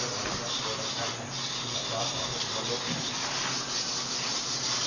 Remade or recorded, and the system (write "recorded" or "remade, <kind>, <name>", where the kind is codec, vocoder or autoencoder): recorded